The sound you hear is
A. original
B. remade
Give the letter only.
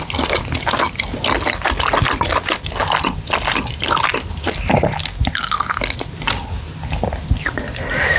A